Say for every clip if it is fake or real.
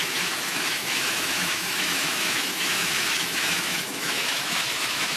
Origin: fake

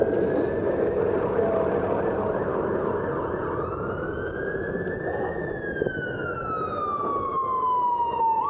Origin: real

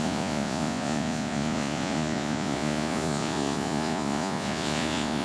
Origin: fake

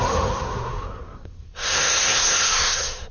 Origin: fake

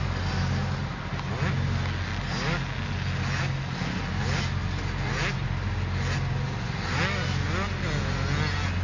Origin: real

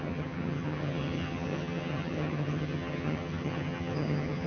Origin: fake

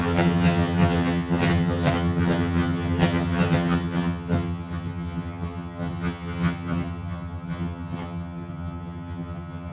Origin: fake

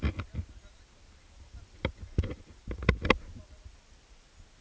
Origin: real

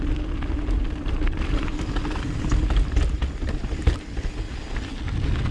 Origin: real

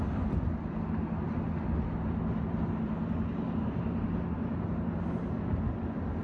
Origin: real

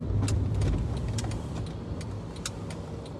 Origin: real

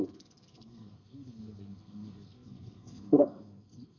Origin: fake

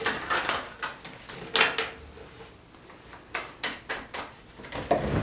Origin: real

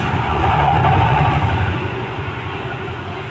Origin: fake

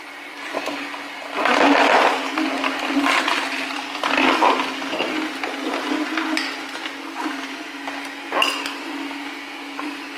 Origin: real